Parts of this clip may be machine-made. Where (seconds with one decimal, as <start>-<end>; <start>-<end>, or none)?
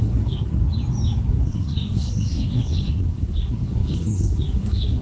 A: 0.0-0.6; 1.3-5.0